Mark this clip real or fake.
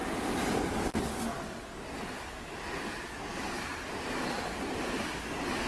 real